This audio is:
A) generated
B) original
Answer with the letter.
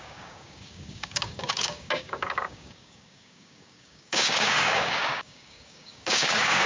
A